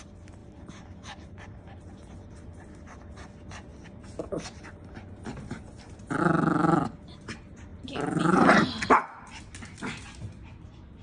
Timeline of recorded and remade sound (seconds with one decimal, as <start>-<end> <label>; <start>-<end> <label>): 0.0-0.4 recorded; 0.4-1.9 remade; 1.9-7.7 recorded; 7.7-8.7 remade; 8.7-11.0 recorded